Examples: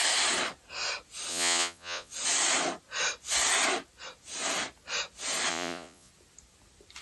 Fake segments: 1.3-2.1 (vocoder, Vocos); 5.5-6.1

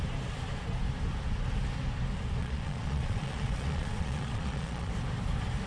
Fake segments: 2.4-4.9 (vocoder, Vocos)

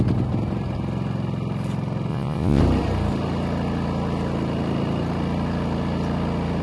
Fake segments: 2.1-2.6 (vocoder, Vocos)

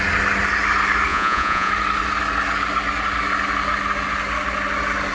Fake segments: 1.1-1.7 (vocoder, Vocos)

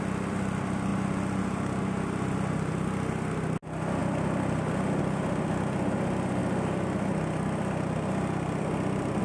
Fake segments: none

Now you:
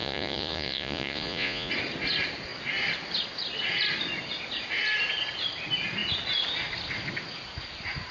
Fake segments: 0.0-1.7 (vocoder, Vocos)

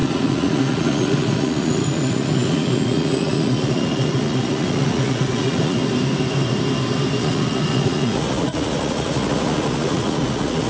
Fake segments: 0.0-5.8 (vocoder, Vocos); 7.2-10.7

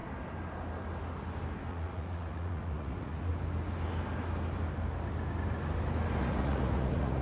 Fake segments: 1.7-3.3 (vocoder, Vocos); 6.2-7.2